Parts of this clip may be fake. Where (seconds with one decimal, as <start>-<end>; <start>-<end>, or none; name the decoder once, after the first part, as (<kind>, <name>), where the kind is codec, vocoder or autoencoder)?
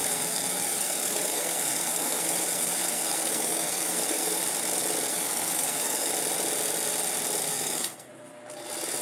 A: 0.0-4.4 (codec, SNAC); 5.1-6.1; 7.4-8.1